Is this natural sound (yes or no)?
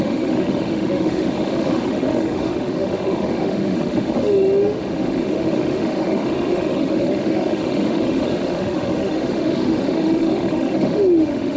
no